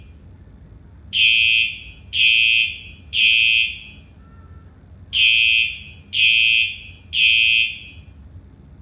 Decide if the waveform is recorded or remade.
recorded